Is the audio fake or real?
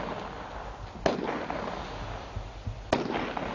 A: real